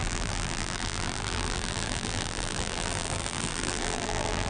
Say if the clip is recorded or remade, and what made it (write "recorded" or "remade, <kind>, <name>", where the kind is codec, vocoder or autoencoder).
remade, vocoder, BigVGAN v2